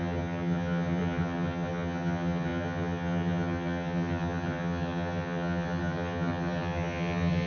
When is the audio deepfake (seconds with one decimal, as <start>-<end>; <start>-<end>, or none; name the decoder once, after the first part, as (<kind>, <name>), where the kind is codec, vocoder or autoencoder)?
0.0-7.5 (vocoder, HiFi-GAN)